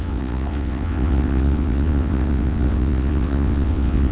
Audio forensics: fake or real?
fake